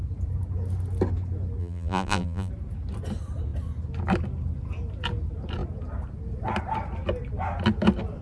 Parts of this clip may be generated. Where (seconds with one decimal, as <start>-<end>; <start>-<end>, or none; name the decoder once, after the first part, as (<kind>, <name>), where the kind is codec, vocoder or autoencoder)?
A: 1.6-2.5 (vocoder, BigVGAN v2)